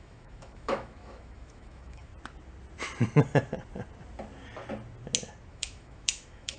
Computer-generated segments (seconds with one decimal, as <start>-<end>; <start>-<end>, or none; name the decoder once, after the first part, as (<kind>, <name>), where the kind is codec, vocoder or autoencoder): 0.0-2.1 (autoencoder, DAC-VAE); 5.5-6.6